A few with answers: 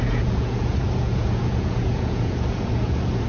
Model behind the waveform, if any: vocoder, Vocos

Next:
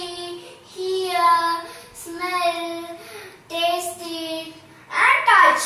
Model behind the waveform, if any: none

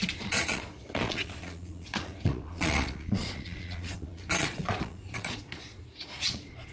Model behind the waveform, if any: vocoder, Vocos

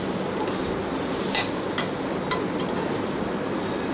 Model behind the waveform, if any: none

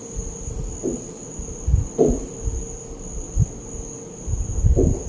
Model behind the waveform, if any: none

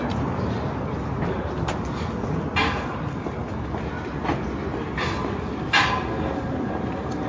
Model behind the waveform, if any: none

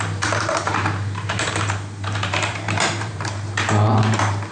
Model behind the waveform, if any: vocoder, BigVGAN v2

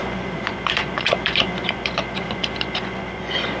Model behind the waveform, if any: vocoder, Vocos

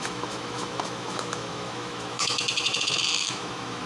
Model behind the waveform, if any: autoencoder, DAC-VAE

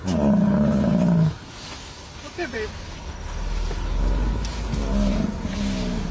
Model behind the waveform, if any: none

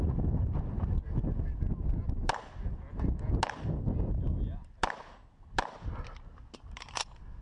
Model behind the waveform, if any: none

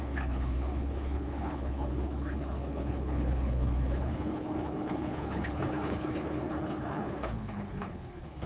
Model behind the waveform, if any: codec, HILCodec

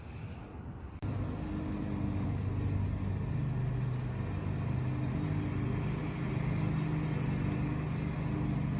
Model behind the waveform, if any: none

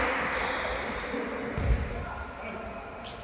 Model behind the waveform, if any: none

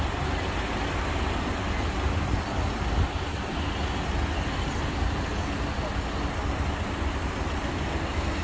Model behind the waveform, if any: none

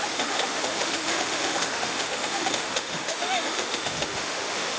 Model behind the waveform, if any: autoencoder, DAC-VAE